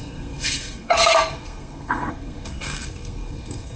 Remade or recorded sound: remade